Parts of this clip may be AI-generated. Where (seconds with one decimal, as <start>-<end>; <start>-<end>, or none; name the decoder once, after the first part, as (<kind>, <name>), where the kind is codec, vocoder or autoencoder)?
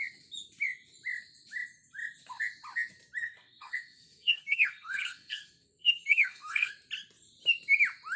3.2-6.7 (codec, SNAC)